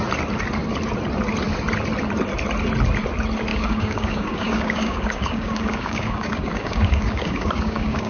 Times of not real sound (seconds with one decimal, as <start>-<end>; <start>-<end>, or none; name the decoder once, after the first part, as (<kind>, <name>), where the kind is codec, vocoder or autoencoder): 3.5-8.1 (codec, DAC)